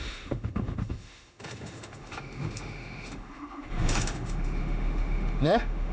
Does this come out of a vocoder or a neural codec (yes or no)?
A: yes